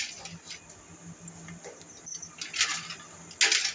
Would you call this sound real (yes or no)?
yes